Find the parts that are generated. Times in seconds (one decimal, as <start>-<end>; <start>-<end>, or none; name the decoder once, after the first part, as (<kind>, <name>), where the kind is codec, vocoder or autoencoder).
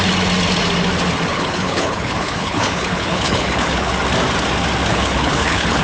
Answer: 1.3-3.9 (codec, HILCodec); 4.9-5.8